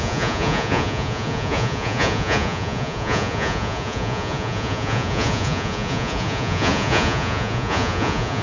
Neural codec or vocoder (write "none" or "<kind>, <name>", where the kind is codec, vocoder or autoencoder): vocoder, Vocos